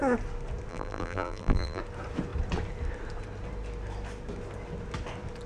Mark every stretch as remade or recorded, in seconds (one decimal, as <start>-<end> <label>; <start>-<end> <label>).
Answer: 0.0-0.7 recorded; 0.7-1.8 remade; 1.8-5.5 recorded